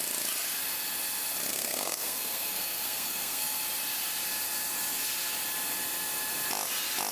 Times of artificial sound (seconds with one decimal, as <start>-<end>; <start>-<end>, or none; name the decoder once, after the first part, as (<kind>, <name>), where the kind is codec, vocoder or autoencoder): 1.5-3.6 (codec, SNAC)